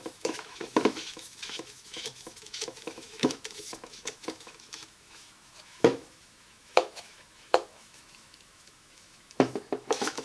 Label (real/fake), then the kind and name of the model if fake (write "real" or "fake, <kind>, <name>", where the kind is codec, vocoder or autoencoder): fake, autoencoder, DAC-VAE